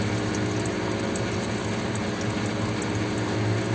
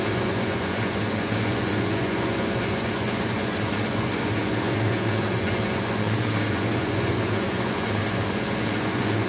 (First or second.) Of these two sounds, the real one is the first